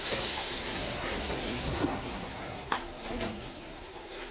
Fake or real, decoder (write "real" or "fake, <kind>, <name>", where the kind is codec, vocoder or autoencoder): fake, codec, SNAC